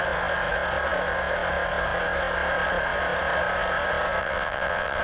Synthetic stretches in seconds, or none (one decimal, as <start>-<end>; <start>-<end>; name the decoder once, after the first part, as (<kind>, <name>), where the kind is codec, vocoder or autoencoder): 4.2-5.0 (vocoder, WaveNeXt)